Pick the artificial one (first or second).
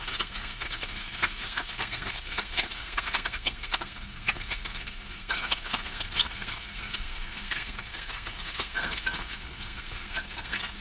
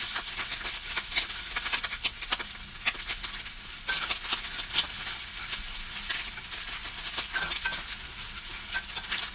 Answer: first